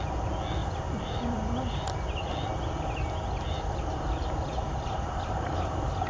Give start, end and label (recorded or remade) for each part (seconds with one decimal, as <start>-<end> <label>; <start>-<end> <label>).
0.0-0.6 recorded; 0.6-4.3 remade; 4.3-4.7 recorded; 4.7-6.1 remade